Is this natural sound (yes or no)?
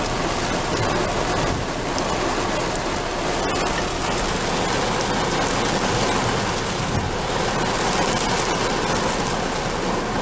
yes